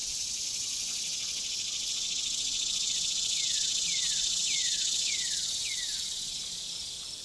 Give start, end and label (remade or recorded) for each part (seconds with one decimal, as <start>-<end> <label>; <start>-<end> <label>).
0.0-6.3 remade; 6.3-7.2 recorded